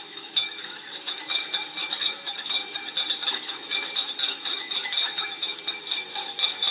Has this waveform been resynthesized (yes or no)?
yes